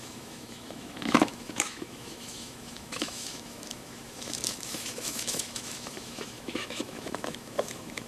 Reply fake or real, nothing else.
fake